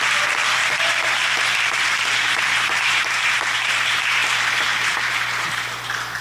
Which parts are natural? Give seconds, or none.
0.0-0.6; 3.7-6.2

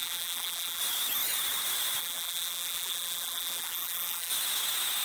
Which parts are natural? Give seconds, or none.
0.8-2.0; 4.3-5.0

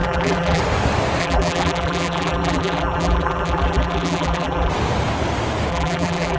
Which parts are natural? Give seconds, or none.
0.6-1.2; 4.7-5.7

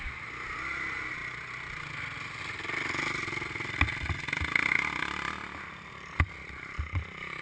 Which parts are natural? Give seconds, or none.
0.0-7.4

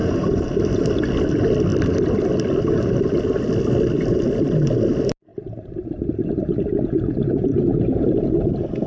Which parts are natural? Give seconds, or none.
0.6-8.9

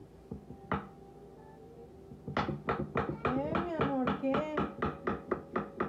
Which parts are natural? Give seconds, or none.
0.0-5.9